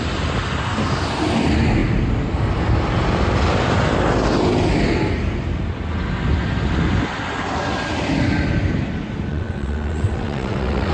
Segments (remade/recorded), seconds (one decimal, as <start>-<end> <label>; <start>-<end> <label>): 0.0-9.3 recorded; 9.3-10.9 remade